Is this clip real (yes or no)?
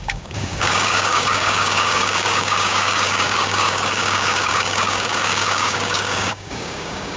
no